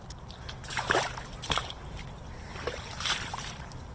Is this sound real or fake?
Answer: real